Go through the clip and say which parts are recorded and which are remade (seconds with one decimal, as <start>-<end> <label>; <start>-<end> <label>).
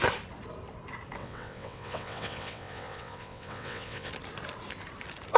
0.0-1.2 recorded; 1.2-4.1 remade; 4.1-5.4 recorded